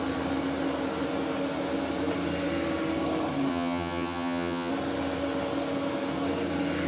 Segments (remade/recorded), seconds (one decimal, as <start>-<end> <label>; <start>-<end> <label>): 0.0-3.5 recorded; 3.5-4.7 remade; 4.7-6.9 recorded

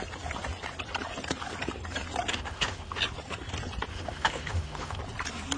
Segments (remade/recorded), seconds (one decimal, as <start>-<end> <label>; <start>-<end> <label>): 0.0-2.3 recorded; 2.3-3.0 remade; 3.0-3.9 recorded; 3.9-5.0 remade; 5.0-5.6 recorded

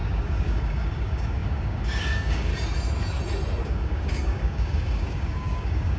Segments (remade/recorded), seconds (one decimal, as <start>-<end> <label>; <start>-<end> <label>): 0.0-2.5 remade; 2.5-3.6 recorded; 3.6-6.0 remade

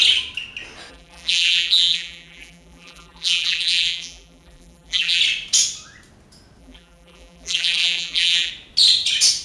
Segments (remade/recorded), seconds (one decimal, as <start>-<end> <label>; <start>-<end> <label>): 0.0-0.9 recorded; 0.9-5.2 remade; 5.2-6.6 recorded; 6.6-8.5 remade; 8.5-9.4 recorded